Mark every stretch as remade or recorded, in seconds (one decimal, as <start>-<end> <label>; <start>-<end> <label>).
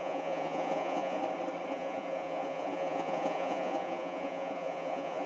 0.0-1.2 remade; 1.2-1.7 recorded; 1.7-5.3 remade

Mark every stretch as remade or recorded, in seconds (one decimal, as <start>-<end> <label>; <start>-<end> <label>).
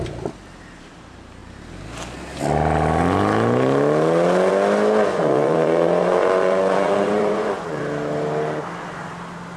0.0-5.1 recorded; 5.1-7.8 remade; 7.8-9.6 recorded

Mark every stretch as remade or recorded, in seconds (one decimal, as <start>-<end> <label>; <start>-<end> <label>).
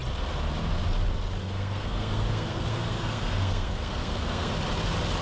0.0-1.4 recorded; 1.4-4.5 remade; 4.5-5.2 recorded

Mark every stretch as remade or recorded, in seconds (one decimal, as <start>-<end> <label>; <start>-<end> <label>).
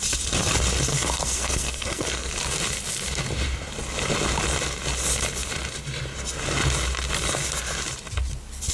0.0-0.9 recorded; 0.9-2.3 remade; 2.3-8.7 recorded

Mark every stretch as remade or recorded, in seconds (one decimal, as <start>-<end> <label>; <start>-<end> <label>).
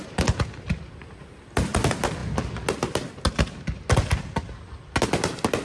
0.0-5.6 recorded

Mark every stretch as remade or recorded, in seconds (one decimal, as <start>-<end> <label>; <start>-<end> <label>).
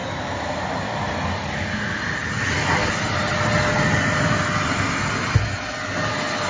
0.0-0.7 remade; 0.7-6.5 recorded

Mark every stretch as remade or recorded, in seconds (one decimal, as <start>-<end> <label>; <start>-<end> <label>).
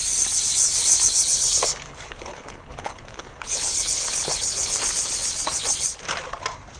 0.0-0.7 recorded; 0.7-4.8 remade; 4.8-6.8 recorded